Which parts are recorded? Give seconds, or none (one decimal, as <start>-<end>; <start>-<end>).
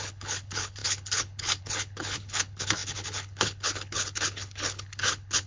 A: none